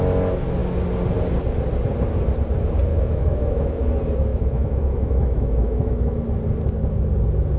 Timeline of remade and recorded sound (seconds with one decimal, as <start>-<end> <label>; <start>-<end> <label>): 0.0-2.9 recorded; 2.9-3.8 remade; 3.8-4.3 recorded; 4.3-6.3 remade; 6.3-7.6 recorded